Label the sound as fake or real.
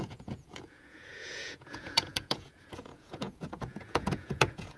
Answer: fake